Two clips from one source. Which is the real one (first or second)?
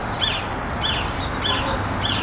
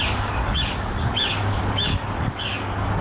first